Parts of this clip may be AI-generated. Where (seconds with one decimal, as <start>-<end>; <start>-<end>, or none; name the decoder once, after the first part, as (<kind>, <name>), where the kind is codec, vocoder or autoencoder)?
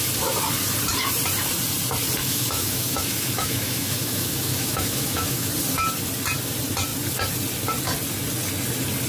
2.2-5.5 (autoencoder, DAC-VAE)